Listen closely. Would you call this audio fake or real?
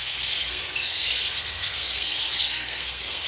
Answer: fake